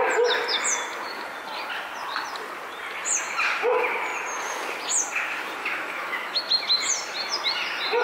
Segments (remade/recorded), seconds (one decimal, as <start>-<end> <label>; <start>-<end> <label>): 0.0-5.6 recorded; 5.6-6.4 remade; 6.4-8.0 recorded